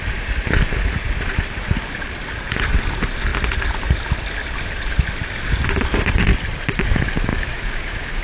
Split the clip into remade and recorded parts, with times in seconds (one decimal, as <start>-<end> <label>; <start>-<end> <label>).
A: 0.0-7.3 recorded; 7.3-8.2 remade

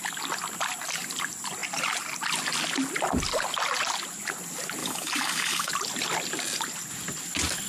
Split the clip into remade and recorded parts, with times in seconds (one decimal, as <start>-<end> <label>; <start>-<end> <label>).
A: 0.0-4.8 recorded; 4.8-5.7 remade; 5.7-7.7 recorded

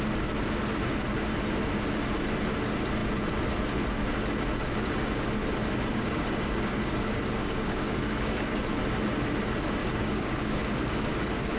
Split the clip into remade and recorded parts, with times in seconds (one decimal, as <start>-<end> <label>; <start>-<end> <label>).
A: 0.0-5.9 recorded; 5.9-8.6 remade; 8.6-9.8 recorded; 9.8-11.1 remade; 11.1-11.6 recorded

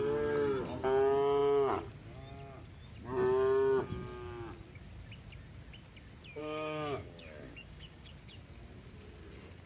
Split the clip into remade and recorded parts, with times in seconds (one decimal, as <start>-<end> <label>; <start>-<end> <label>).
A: 0.0-6.4 recorded; 6.4-8.1 remade; 8.1-9.7 recorded